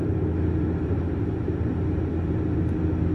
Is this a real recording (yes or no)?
yes